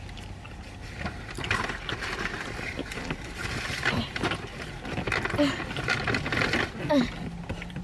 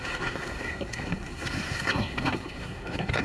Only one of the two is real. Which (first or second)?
first